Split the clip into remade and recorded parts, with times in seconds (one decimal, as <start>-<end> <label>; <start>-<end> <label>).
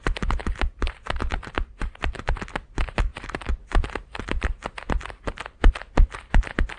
0.0-0.4 recorded; 0.4-2.3 remade; 2.3-3.1 recorded; 3.1-5.7 remade; 5.7-6.8 recorded